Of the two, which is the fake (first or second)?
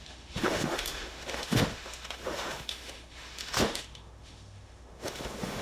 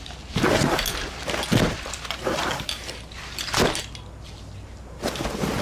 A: first